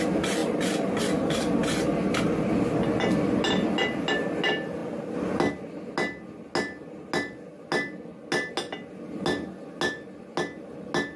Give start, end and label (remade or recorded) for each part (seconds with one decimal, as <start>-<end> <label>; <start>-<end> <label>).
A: 0.0-11.2 recorded